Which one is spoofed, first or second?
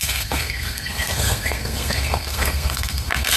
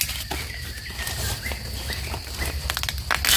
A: first